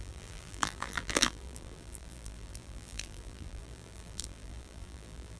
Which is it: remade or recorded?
remade